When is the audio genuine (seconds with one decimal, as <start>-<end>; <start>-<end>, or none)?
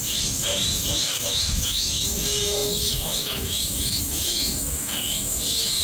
none